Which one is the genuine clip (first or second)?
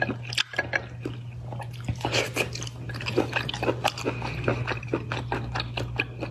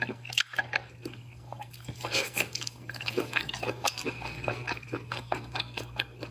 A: first